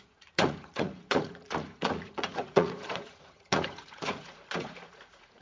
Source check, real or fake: fake